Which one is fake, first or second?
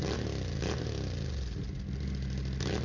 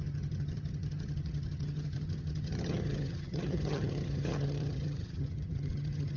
second